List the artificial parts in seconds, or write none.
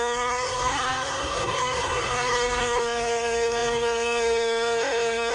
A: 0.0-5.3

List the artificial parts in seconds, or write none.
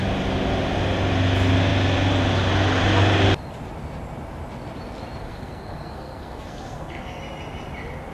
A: 5.2-7.2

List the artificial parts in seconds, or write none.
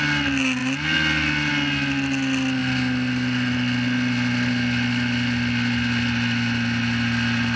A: none